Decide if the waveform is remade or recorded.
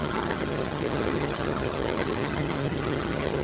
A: remade